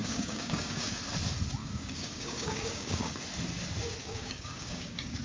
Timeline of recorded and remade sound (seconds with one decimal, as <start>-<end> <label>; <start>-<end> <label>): 0.0-1.0 remade; 1.0-1.6 recorded; 1.6-3.2 remade; 3.2-4.0 recorded; 4.0-5.2 remade